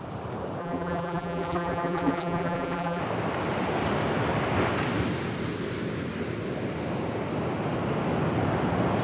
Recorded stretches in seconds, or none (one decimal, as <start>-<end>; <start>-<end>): 0.0-0.6; 3.0-9.0